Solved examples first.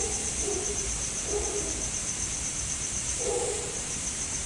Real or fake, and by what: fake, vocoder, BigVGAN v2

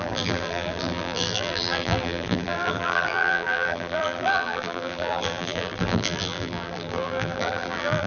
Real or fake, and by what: fake, vocoder, BigVGAN v2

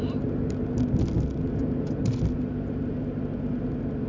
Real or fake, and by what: real